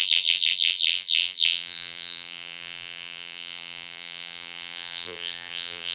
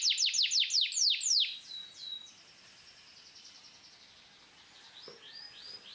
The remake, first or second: first